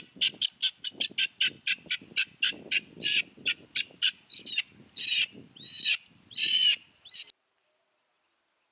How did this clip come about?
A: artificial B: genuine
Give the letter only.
B